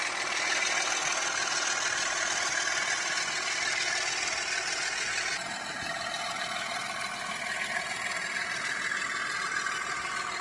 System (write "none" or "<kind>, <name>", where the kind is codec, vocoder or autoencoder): none